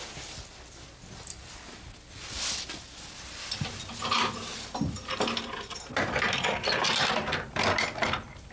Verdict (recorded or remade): recorded